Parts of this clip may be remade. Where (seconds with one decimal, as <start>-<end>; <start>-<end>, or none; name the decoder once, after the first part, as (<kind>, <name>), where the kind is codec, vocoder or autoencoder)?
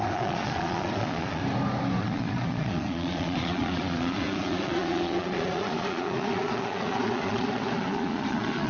0.0-1.4 (vocoder, Vocos); 2.0-8.7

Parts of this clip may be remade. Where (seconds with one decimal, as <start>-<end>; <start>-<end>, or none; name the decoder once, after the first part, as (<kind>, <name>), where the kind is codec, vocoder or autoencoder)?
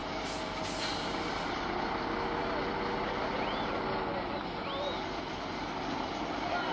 none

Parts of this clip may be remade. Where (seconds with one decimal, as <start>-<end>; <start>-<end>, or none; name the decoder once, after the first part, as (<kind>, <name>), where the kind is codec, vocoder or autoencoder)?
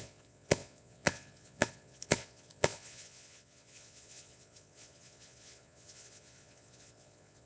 0.0-7.5 (vocoder, Vocos)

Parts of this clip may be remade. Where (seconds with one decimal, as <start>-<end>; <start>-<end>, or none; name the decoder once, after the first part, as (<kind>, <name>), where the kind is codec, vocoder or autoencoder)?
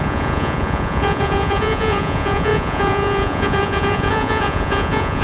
0.0-5.2 (vocoder, Vocos)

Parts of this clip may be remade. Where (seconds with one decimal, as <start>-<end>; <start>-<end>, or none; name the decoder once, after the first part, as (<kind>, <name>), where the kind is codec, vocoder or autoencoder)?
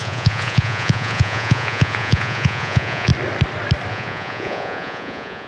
0.0-3.1 (vocoder, Vocos); 3.9-5.5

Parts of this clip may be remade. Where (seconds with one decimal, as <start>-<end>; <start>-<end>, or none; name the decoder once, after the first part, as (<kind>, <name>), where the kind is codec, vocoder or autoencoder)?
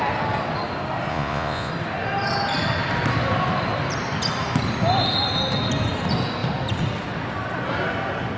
1.1-1.7 (vocoder, Vocos)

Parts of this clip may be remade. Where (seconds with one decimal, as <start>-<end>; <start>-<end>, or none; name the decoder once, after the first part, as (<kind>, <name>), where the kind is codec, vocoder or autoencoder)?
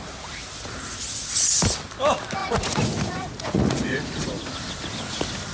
2.4-4.4 (vocoder, Vocos)